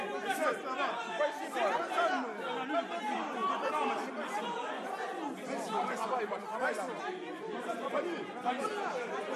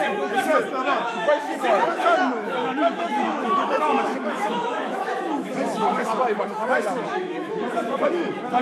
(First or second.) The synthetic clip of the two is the second